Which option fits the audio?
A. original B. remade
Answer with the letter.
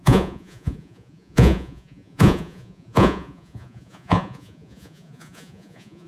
B